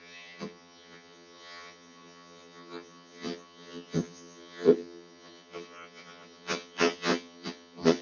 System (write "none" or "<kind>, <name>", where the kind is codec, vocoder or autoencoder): vocoder, HiFi-GAN